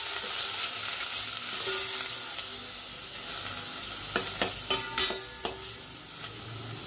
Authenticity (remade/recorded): recorded